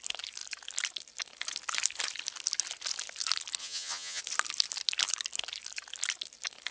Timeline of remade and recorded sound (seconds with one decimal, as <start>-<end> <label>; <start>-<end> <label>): 0.0-3.6 recorded; 3.6-4.2 remade; 4.2-6.7 recorded